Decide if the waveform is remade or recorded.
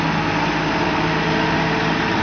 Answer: recorded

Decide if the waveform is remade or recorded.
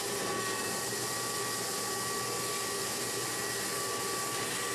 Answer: recorded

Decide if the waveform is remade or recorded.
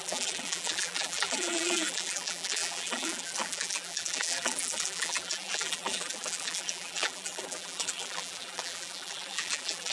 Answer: remade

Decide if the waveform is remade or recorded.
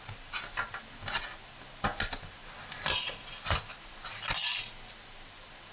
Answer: recorded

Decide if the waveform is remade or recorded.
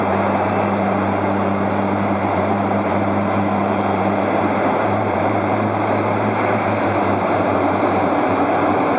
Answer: remade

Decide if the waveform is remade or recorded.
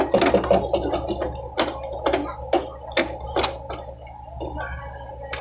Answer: recorded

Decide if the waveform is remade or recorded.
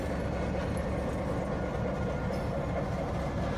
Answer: recorded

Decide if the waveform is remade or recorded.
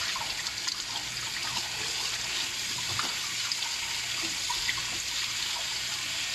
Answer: recorded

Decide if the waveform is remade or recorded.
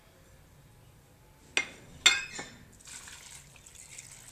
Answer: recorded